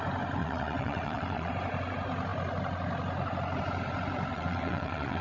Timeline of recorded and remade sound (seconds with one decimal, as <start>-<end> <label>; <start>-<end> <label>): 0.0-0.4 recorded; 0.4-1.5 remade; 1.5-4.3 recorded; 4.3-5.2 remade